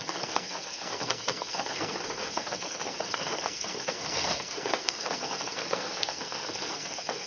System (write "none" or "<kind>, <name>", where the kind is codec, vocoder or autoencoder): codec, SNAC